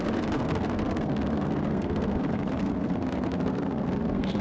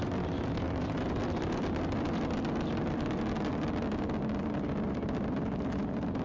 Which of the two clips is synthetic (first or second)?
first